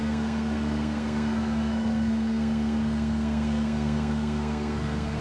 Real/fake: fake